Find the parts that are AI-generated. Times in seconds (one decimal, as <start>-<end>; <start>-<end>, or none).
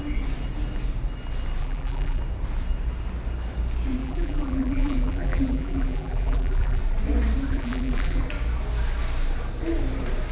1.6-2.2; 4.0-6.8; 7.5-8.2